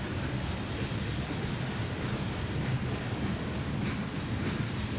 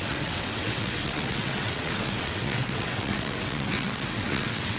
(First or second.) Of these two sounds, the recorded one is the first